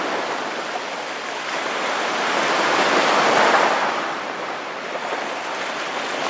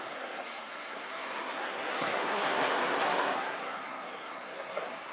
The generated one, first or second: second